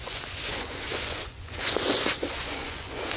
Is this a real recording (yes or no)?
no